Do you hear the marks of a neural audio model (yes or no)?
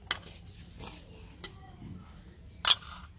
no